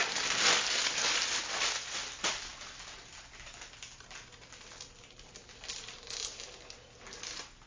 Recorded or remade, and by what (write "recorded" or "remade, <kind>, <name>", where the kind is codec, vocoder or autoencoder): recorded